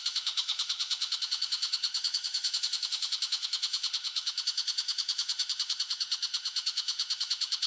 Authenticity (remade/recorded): remade